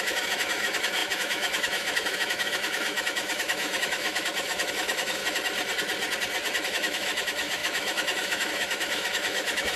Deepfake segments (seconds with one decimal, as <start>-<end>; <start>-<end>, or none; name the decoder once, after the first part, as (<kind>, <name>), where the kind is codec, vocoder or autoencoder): 0.0-5.2 (autoencoder, DAC-VAE); 6.7-9.8